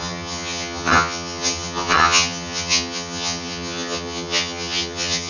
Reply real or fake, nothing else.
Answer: fake